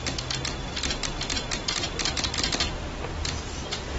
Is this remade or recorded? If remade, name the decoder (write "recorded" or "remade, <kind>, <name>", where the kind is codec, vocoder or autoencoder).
recorded